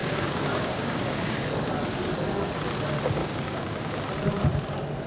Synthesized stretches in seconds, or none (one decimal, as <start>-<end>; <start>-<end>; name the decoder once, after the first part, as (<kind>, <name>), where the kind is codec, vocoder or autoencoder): 0.0-1.4 (codec, DAC); 3.2-4.0